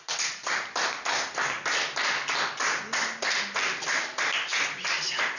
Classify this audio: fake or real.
real